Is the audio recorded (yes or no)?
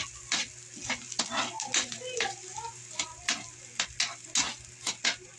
yes